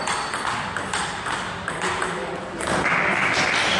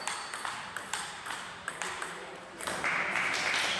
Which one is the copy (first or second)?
second